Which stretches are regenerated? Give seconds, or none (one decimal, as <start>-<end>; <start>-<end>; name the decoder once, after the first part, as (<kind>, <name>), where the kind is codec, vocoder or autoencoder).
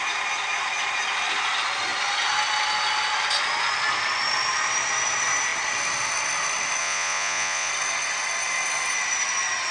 6.8-7.7 (vocoder, Vocos)